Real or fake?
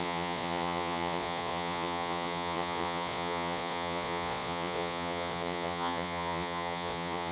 fake